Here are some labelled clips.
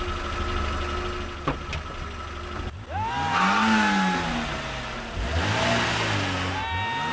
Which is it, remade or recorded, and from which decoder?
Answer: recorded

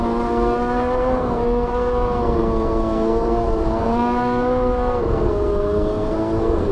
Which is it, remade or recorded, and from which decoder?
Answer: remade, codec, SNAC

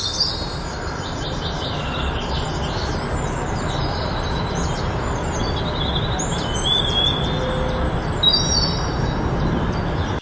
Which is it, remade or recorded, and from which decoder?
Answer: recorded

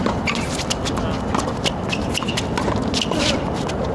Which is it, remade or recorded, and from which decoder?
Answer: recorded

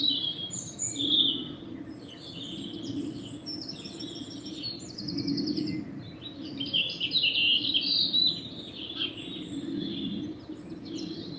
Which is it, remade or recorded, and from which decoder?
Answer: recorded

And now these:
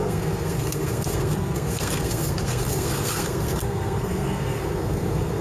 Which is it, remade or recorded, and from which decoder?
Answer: remade, codec, SNAC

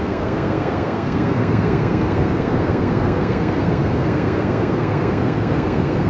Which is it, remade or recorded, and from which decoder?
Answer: remade, codec, SNAC